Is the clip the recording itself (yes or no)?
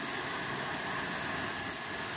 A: yes